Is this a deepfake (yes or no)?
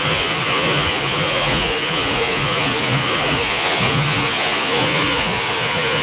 yes